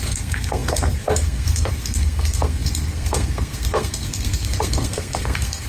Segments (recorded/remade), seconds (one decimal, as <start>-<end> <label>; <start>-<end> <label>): 0.0-5.7 remade

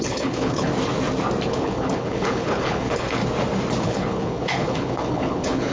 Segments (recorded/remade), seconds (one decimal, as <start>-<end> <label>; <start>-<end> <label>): 0.0-0.7 remade; 0.7-1.5 recorded; 1.5-3.2 remade; 3.2-3.8 recorded; 3.8-5.7 remade

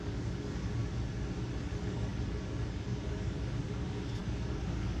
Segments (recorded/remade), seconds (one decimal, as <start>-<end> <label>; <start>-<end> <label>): 0.0-0.8 remade; 0.8-1.6 recorded; 1.6-5.0 remade

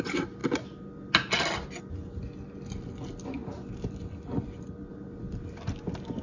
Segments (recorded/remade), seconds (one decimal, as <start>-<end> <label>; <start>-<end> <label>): 0.0-6.2 recorded